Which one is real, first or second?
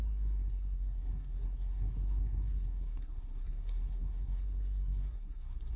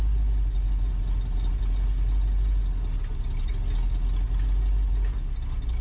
second